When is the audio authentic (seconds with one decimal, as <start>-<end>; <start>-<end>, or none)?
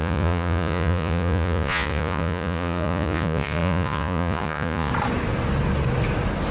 4.9-6.5